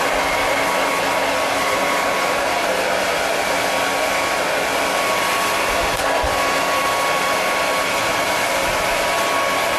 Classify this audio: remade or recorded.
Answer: recorded